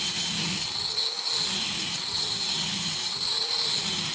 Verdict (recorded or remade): recorded